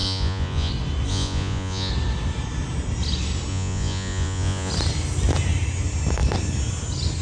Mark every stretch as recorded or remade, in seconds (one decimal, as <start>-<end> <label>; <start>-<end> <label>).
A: 0.0-0.7 remade; 0.7-1.1 recorded; 1.1-1.9 remade; 1.9-3.5 recorded; 3.5-4.7 remade; 4.7-7.2 recorded